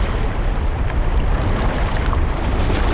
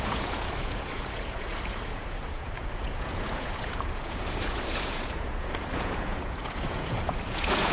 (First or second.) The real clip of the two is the first